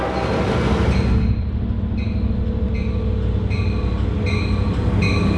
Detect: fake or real real